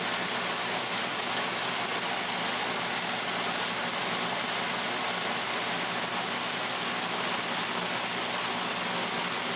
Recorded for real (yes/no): yes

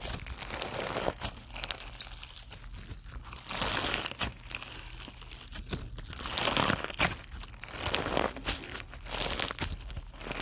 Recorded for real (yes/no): yes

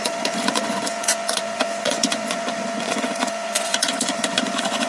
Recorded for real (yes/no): no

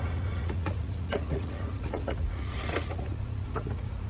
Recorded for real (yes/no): no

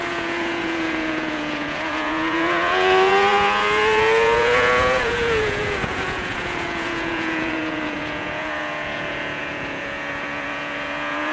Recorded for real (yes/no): no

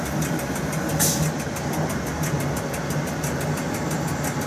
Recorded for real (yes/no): yes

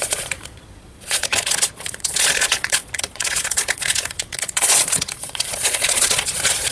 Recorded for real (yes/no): no